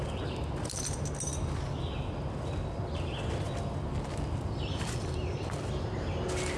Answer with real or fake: real